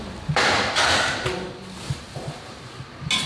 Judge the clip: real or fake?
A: real